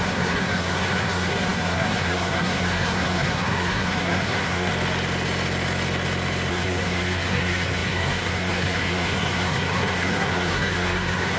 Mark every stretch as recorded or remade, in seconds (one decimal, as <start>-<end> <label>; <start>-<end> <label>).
0.0-4.7 remade; 4.7-6.5 recorded; 6.5-11.4 remade